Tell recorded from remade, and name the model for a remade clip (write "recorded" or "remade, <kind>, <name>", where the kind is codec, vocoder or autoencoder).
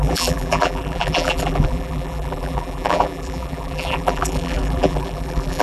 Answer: remade, vocoder, BigVGAN v2